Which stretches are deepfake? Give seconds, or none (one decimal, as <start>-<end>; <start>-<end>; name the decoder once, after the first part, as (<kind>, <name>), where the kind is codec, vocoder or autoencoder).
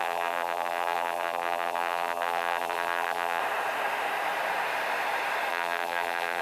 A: 0.0-3.4 (vocoder, BigVGAN v2); 5.5-6.4